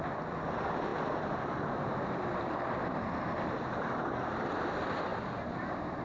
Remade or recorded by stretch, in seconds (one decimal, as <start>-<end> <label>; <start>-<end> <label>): 0.0-6.0 recorded

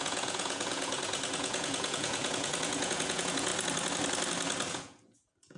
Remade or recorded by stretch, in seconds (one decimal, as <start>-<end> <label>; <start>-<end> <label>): 0.0-3.5 remade; 3.5-4.7 recorded; 4.7-5.6 remade

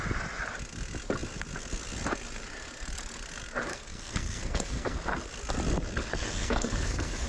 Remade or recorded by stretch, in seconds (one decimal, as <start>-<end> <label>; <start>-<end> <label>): 0.0-3.7 recorded; 3.7-5.3 remade; 5.3-6.1 recorded; 6.1-7.3 remade

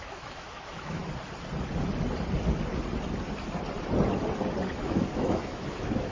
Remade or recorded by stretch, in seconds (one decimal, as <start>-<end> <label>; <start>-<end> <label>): 0.0-1.0 remade; 1.0-4.7 recorded; 4.7-6.1 remade

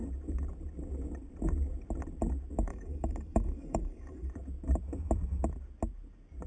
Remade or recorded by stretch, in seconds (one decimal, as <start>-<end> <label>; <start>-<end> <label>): 0.0-2.7 recorded; 2.7-4.3 remade; 4.3-6.5 recorded

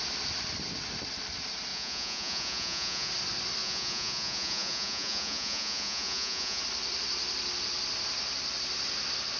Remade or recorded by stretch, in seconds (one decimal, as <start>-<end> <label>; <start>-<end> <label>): 0.0-1.7 recorded; 1.7-3.1 remade; 3.1-3.6 recorded; 3.6-6.6 remade; 6.6-9.4 recorded

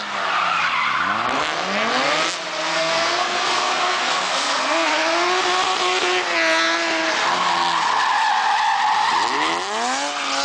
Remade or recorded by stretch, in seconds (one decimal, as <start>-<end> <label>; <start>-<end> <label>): 0.0-2.7 recorded; 2.7-4.9 remade; 4.9-10.4 recorded